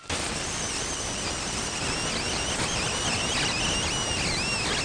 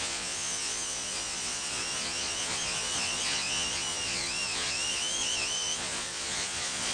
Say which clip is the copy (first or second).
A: second